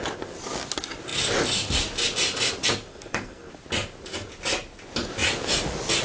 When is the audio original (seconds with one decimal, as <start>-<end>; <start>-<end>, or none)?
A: 0.0-2.9; 3.5-6.0